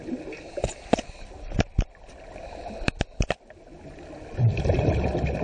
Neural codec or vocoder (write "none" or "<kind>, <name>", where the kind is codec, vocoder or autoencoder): none